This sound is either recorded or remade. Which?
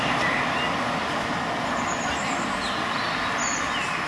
recorded